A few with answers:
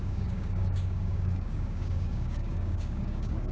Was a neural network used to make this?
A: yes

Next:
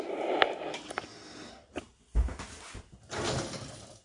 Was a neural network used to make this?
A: no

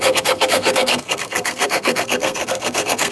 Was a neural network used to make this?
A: yes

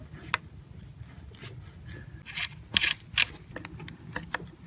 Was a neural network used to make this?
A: no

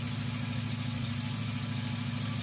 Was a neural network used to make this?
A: no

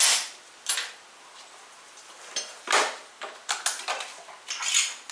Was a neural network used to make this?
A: no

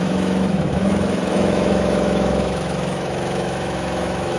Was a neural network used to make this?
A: yes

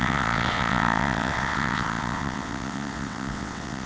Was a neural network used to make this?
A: yes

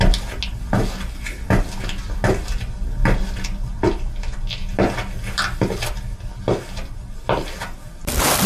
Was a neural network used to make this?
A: no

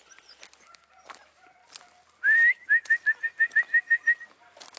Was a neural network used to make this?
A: no